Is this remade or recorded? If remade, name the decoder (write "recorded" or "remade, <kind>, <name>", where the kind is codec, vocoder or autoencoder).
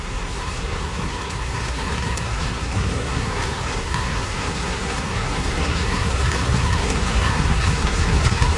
remade, codec, SNAC